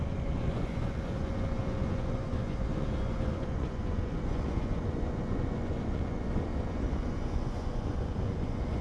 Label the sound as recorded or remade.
remade